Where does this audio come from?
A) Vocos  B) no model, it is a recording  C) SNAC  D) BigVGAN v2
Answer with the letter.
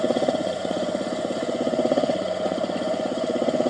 A